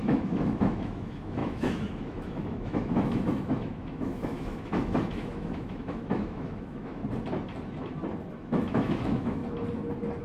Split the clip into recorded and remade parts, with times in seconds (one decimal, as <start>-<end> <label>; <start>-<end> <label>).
0.0-7.0 remade; 7.0-8.3 recorded; 8.3-9.4 remade; 9.4-10.2 recorded